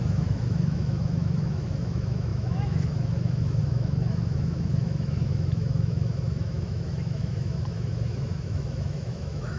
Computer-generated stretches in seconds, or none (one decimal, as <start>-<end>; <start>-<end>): 0.0-9.6